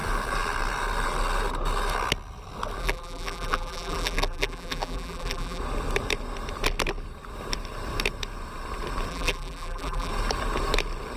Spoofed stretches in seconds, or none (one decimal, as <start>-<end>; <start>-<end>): 2.8-5.6; 9.1-10.1

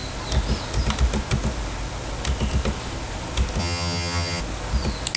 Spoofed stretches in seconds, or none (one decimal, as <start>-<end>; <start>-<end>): 3.6-4.4

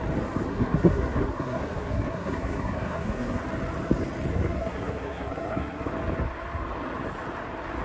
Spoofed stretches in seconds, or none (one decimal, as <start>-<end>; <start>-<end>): 0.5-3.4; 4.3-5.9

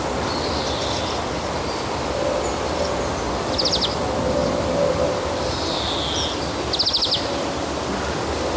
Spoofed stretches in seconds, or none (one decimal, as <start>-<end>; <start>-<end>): none

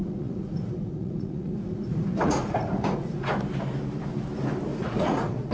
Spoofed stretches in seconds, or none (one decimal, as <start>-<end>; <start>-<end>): 0.0-3.3; 4.7-5.5

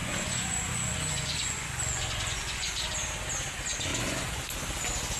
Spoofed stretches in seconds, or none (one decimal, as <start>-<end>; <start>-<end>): 0.0-2.9; 3.9-4.4

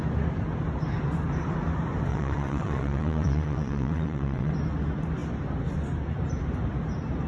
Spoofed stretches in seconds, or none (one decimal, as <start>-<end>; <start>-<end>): 2.1-4.5